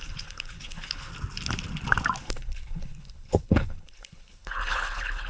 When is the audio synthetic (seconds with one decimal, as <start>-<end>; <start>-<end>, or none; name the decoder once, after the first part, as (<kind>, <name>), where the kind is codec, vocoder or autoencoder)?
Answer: 0.0-1.1 (codec, HILCodec); 2.2-5.3